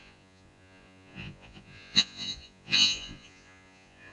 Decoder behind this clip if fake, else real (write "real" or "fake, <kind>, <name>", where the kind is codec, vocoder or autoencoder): fake, vocoder, Vocos